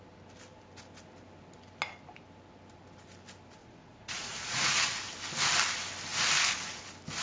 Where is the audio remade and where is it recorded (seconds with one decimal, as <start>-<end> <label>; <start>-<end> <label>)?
0.0-3.6 recorded; 3.6-5.0 remade; 5.0-7.2 recorded

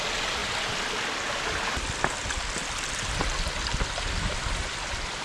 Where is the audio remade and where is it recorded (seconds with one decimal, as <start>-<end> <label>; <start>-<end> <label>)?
0.0-5.2 recorded

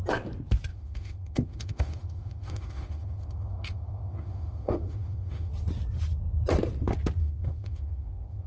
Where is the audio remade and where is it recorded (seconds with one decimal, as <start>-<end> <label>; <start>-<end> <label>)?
0.0-0.7 recorded; 0.7-5.5 remade; 5.5-7.2 recorded; 7.2-8.5 remade

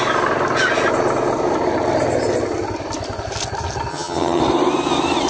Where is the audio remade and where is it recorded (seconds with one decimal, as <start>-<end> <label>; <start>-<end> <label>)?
0.0-3.9 recorded; 3.9-4.4 remade; 4.4-5.3 recorded